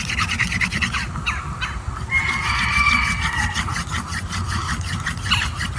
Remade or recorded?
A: recorded